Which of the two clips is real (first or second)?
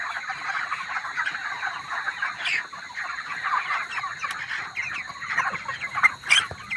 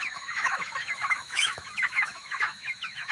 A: first